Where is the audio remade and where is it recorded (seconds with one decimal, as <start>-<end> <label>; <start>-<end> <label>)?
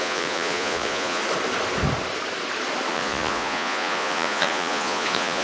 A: 0.0-1.2 remade; 1.2-2.9 recorded; 2.9-5.4 remade